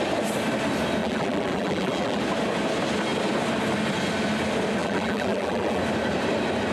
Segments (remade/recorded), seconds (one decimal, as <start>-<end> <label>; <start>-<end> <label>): 0.0-1.0 recorded; 1.0-2.2 remade; 2.2-4.8 recorded; 4.8-5.8 remade; 5.8-6.7 recorded